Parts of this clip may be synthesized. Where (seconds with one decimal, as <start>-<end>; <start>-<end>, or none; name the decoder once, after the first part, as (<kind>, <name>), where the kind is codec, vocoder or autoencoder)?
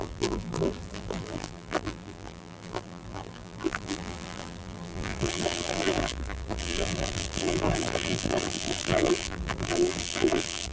0.0-10.7 (vocoder, BigVGAN v2)